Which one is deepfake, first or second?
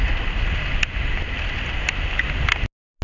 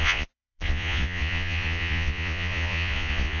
second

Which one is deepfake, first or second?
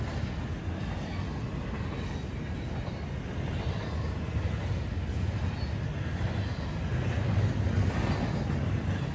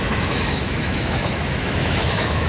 second